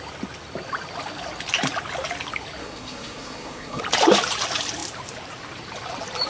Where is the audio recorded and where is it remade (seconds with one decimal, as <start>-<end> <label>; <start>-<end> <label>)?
0.0-2.6 recorded; 2.6-3.8 remade; 3.8-6.3 recorded